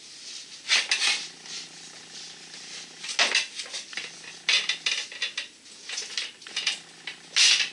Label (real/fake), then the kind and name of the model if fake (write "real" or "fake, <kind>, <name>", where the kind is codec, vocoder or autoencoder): real